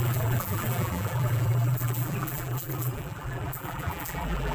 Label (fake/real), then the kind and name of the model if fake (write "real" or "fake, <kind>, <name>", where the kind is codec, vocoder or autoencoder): fake, vocoder, BigVGAN v2